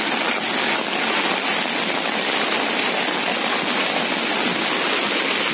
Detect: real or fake real